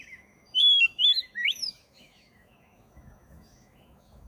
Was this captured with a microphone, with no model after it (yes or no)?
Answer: no